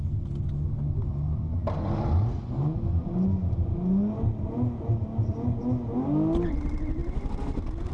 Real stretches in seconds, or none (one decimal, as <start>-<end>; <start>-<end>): 0.0-7.9

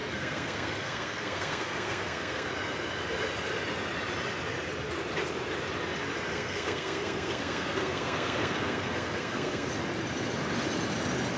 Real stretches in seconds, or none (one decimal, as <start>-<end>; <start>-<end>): 2.5-6.3; 9.7-11.4

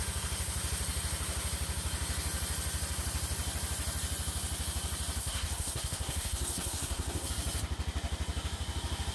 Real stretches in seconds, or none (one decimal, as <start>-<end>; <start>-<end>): 0.0-5.2; 7.3-9.1

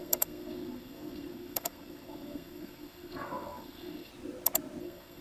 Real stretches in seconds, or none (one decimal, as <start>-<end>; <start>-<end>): 4.1-4.8

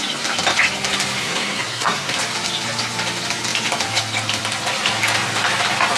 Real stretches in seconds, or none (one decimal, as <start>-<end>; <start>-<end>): 0.0-1.2; 2.2-6.0